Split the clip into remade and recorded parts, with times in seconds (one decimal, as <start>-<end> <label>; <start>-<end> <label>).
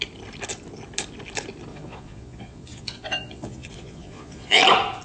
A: 0.0-1.7 recorded; 1.7-4.6 remade; 4.6-5.0 recorded